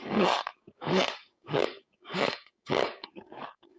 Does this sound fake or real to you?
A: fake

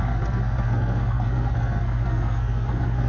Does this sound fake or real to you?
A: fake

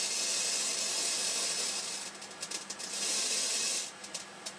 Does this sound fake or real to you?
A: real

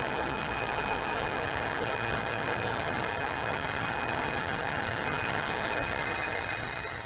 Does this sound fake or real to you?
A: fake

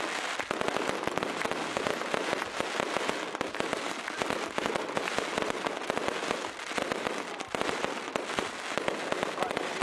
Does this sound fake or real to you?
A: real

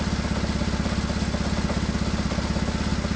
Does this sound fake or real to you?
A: real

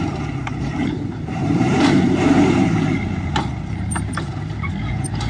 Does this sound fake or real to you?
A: fake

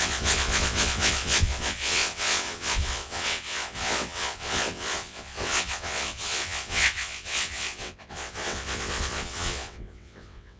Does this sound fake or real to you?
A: fake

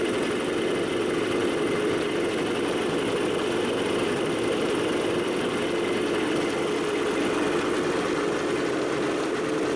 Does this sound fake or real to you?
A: real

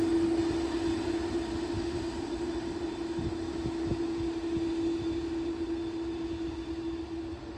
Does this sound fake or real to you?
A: real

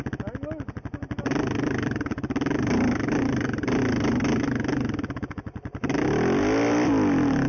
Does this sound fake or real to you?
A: real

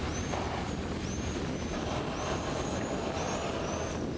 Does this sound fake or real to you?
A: real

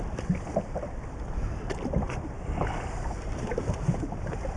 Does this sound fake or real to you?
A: real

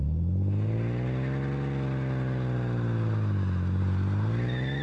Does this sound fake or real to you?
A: real